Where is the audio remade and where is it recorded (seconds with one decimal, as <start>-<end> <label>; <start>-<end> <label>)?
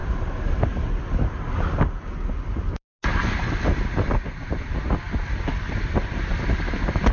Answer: 0.0-7.1 recorded